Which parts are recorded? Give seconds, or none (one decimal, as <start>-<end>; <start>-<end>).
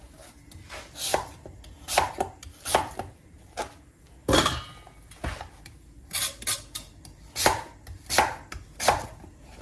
0.0-9.6